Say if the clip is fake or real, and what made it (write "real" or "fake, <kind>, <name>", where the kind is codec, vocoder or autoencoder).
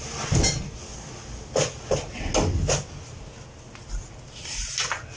real